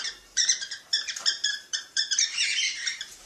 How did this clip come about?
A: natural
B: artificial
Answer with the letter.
B